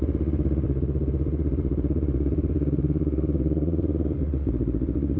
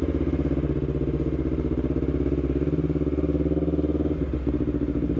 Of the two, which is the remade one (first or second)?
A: first